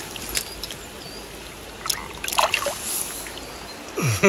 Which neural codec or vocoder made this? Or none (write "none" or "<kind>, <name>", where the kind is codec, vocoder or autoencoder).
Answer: none